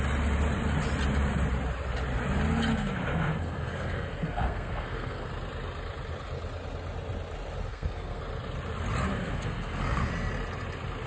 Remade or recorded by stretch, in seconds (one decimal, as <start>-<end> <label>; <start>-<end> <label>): 0.0-2.7 recorded; 2.7-5.3 remade; 5.3-7.7 recorded; 7.7-8.2 remade; 8.2-9.1 recorded; 9.1-10.1 remade; 10.1-11.1 recorded